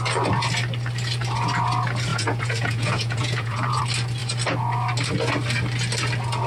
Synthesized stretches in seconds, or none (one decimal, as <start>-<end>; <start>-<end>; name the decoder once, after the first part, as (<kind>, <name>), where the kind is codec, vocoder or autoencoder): 2.1-3.8 (vocoder, Vocos)